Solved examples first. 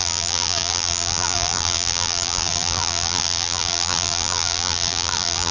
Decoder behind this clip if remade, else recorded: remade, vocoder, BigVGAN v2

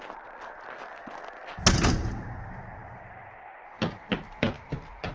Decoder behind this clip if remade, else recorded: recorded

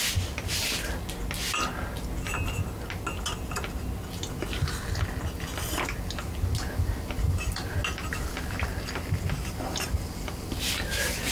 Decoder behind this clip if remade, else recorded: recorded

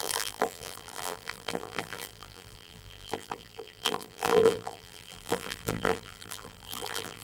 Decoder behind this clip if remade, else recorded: remade, vocoder, BigVGAN v2